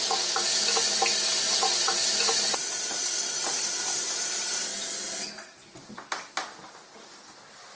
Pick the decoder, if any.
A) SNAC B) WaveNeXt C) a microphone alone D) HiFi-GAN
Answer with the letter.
C